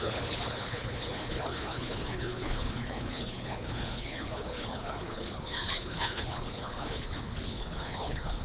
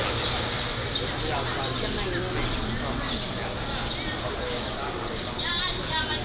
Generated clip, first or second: first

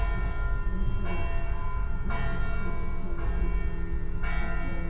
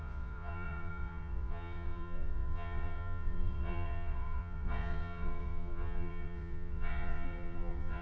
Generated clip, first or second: second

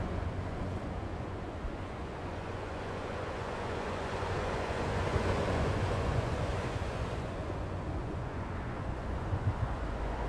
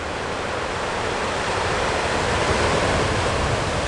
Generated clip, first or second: first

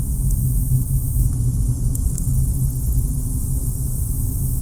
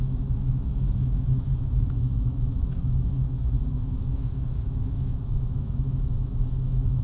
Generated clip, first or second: second